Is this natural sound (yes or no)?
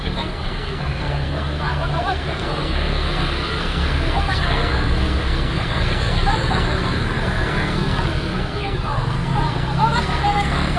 no